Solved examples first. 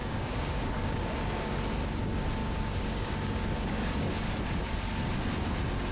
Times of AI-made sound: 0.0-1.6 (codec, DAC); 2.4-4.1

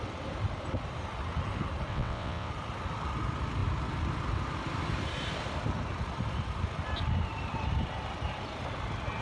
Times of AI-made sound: 1.9-2.5 (vocoder, WaveNeXt)